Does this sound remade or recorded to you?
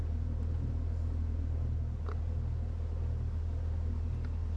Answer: recorded